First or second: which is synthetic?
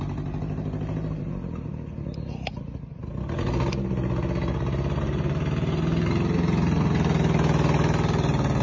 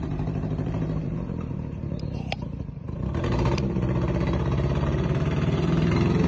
second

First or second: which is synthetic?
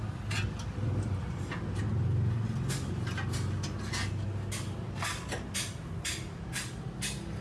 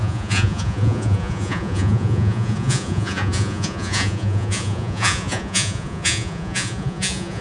second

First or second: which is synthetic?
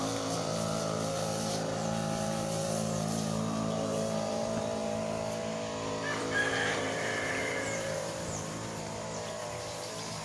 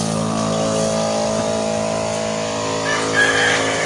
first